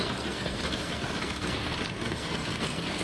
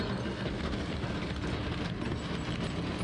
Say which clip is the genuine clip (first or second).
second